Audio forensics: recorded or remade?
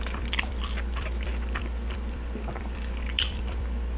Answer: remade